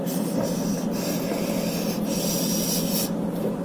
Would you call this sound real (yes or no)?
yes